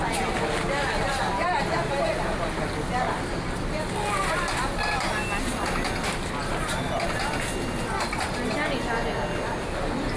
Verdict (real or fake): real